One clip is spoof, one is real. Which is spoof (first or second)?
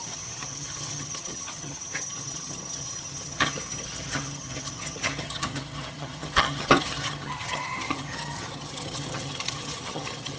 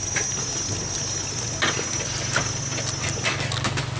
first